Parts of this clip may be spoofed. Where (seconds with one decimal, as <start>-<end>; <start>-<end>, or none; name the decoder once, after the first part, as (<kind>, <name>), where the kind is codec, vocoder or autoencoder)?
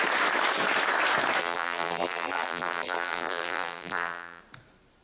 1.4-4.4 (vocoder, BigVGAN v2)